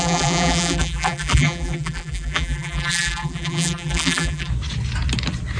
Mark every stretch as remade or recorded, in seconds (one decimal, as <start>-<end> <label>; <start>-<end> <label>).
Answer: 0.0-4.5 remade; 4.5-5.6 recorded